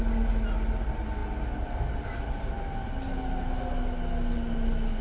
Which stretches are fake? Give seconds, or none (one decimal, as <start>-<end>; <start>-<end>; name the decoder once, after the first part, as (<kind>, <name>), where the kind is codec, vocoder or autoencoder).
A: none